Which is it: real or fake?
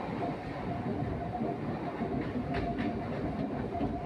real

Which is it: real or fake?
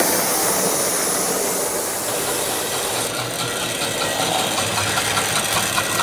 real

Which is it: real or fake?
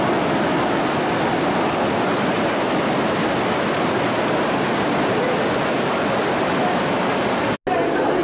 real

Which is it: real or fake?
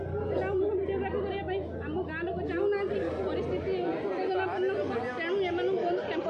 real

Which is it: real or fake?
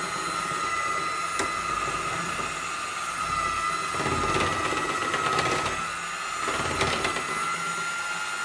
real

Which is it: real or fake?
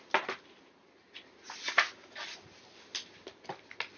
real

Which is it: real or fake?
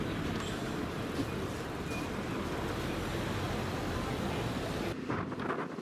real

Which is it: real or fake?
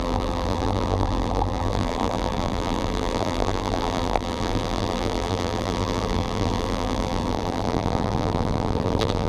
fake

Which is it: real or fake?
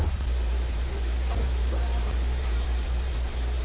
fake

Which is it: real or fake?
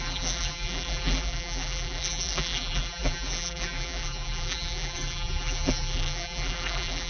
fake